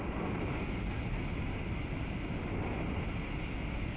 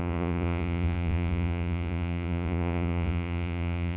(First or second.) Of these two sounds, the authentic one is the first